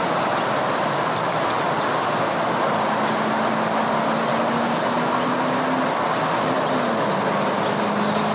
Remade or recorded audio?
recorded